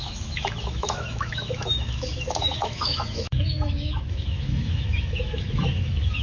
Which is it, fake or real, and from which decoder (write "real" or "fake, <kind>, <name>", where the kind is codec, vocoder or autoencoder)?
fake, autoencoder, DAC-VAE